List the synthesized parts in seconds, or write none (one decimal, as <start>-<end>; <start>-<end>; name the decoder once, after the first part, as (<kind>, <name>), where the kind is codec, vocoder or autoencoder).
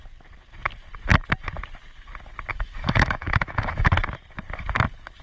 2.5-3.9 (autoencoder, DAC-VAE)